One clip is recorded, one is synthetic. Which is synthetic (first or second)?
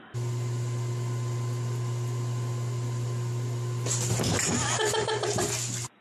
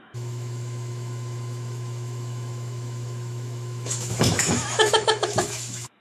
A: second